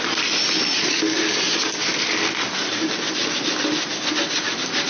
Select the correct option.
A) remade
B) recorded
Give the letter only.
B